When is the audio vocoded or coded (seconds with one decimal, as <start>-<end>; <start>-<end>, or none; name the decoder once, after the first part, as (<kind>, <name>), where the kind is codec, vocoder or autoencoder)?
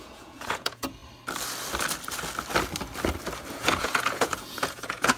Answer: 0.0-1.0 (vocoder, Vocos); 3.5-5.2